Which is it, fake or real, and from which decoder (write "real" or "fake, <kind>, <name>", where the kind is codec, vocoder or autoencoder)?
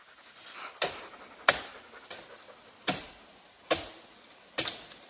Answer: real